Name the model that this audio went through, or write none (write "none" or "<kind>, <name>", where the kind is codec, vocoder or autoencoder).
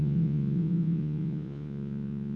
vocoder, Vocos